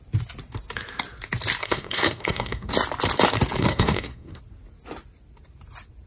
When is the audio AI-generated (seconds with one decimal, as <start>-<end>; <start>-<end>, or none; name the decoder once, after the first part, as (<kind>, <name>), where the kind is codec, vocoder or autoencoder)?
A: 1.6-2.7 (codec, SNAC); 3.6-4.4